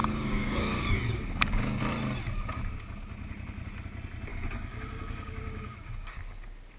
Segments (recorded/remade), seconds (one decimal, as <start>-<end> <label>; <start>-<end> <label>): 0.0-1.8 remade; 1.8-4.3 recorded; 4.3-6.2 remade; 6.2-6.8 recorded